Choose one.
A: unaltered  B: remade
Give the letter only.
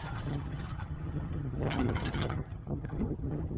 B